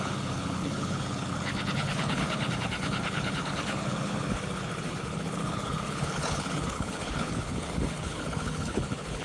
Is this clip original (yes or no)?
no